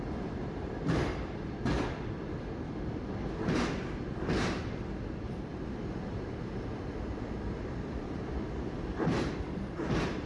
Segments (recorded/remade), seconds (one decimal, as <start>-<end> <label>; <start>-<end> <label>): 0.0-5.5 remade; 5.5-7.6 recorded; 7.6-10.3 remade